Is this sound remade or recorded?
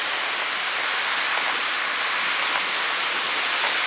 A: recorded